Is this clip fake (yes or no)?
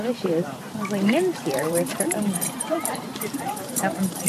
yes